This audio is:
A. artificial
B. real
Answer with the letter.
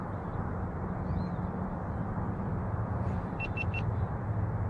A